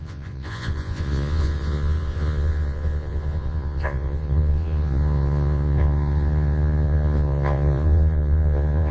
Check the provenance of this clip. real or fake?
fake